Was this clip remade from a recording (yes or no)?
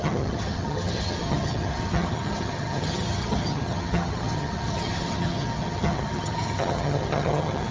yes